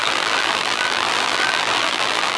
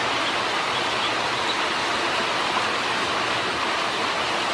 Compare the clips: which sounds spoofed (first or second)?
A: first